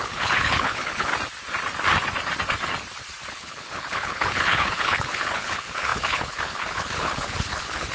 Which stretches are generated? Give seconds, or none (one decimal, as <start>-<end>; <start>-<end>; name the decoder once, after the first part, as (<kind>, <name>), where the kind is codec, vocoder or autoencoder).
0.0-1.1 (codec, HILCodec); 3.3-7.9